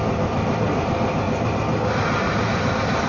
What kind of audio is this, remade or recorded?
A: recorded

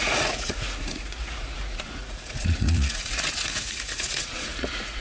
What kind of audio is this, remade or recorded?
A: remade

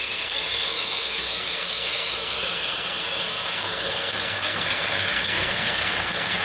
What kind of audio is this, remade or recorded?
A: remade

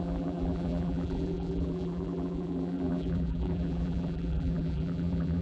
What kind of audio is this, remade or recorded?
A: remade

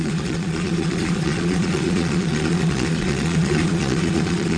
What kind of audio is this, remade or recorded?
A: remade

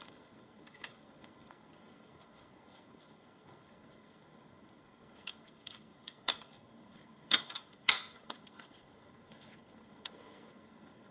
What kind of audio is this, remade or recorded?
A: remade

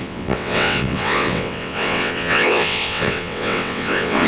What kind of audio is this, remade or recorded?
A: remade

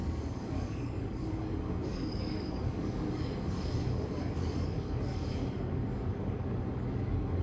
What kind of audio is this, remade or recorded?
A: remade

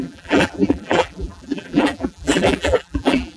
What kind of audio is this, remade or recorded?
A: remade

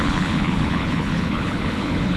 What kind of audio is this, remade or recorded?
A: remade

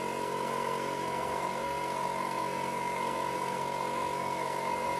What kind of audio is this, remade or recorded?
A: remade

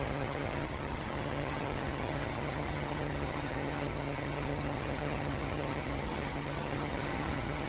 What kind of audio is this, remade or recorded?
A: remade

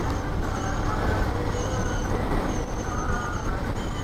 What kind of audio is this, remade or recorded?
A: recorded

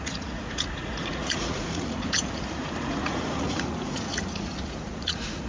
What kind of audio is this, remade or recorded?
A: remade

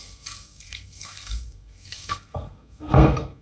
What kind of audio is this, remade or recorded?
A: remade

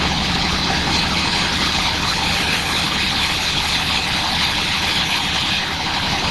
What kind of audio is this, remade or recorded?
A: remade